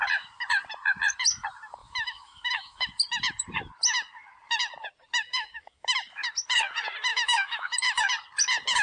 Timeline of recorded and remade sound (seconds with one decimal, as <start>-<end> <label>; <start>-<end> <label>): 0.0-1.8 recorded; 1.8-2.9 remade; 2.9-5.2 recorded; 5.2-6.0 remade; 6.0-7.1 recorded; 7.1-8.0 remade; 8.0-8.8 recorded